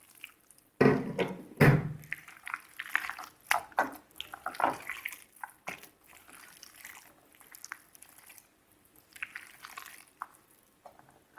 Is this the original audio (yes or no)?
yes